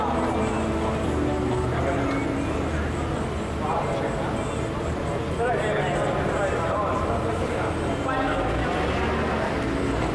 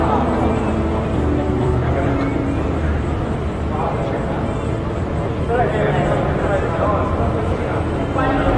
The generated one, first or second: second